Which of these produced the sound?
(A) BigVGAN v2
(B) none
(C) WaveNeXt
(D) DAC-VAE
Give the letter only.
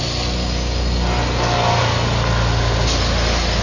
B